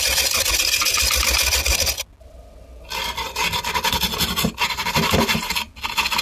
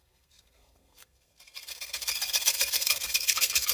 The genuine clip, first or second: first